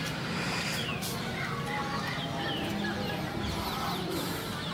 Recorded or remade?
recorded